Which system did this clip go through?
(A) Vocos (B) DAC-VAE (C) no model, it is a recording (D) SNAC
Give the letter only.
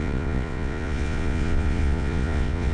A